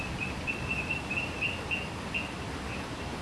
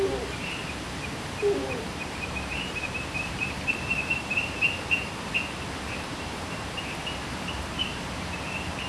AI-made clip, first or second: second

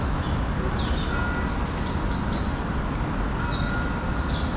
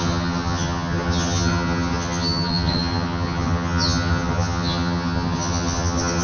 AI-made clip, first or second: second